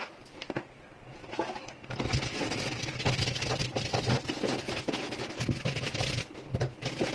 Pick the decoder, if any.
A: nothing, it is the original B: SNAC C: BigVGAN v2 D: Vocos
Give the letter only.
A